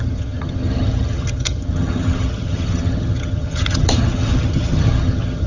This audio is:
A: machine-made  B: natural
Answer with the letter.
A